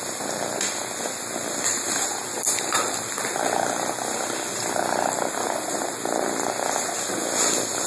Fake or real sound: real